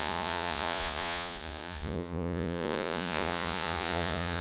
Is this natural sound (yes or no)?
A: no